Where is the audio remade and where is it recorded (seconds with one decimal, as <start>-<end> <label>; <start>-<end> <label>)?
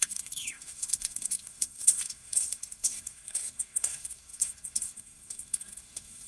0.0-6.3 remade